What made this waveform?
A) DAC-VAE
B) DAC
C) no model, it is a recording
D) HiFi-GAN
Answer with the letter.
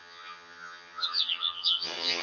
D